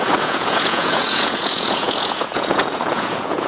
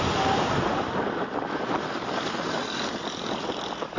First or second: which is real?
second